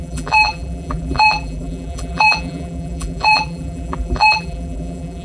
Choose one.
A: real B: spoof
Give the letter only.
B